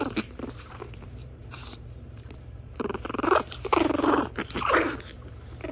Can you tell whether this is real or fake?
fake